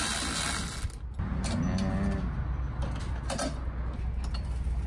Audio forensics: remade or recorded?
recorded